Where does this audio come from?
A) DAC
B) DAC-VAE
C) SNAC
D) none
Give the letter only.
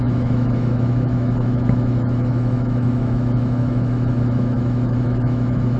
B